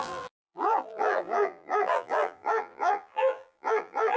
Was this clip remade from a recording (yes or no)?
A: yes